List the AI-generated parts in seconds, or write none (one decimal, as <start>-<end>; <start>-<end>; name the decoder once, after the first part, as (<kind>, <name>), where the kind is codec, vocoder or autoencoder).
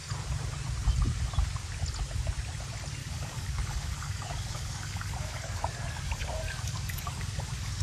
3.0-7.8 (codec, DAC)